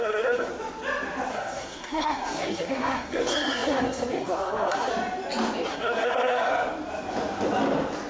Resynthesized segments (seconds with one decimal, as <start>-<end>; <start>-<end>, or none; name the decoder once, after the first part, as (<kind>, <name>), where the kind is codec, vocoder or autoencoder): 0.0-0.5 (codec, SNAC); 1.3-4.9; 5.7-6.5